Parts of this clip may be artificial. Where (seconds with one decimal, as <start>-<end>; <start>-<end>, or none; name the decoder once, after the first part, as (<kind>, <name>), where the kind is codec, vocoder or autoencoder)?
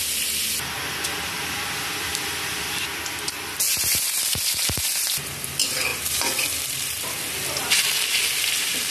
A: 5.9-7.3 (vocoder, BigVGAN v2)